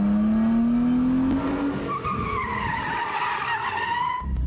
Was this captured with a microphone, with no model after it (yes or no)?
yes